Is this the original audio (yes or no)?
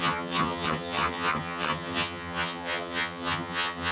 no